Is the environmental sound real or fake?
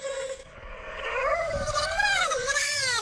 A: fake